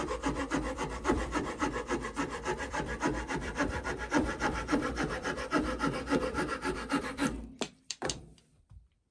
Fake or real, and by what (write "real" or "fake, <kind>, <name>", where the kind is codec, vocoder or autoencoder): fake, vocoder, BigVGAN v2